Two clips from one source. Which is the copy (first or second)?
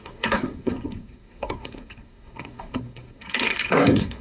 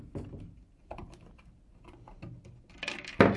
first